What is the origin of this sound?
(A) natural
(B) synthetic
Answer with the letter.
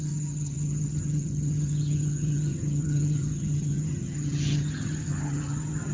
B